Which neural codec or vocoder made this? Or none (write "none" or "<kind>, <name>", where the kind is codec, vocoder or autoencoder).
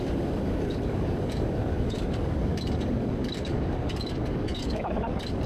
codec, DAC